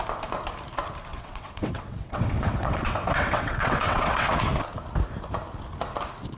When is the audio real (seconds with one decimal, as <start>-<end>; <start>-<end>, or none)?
0.0-1.1; 4.3-6.4